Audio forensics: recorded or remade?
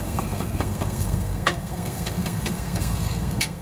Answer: remade